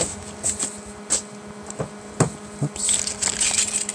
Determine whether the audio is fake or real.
real